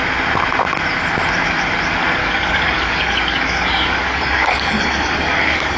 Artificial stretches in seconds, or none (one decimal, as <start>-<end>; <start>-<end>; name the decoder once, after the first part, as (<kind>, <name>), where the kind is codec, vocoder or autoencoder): 2.2-5.8 (codec, DAC)